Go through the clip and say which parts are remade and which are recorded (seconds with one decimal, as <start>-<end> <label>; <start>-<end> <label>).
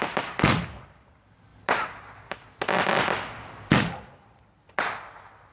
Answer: 0.0-5.5 recorded